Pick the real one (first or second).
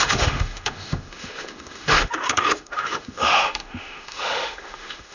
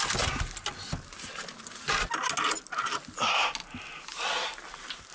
second